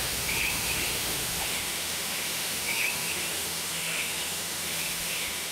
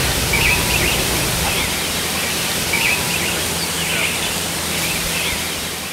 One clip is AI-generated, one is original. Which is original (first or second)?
second